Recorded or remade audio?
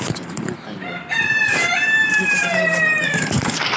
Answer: remade